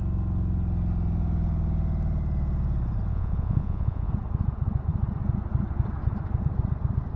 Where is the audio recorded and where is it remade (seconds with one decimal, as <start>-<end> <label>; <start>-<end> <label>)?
0.0-3.1 recorded; 3.1-4.1 remade; 4.1-7.2 recorded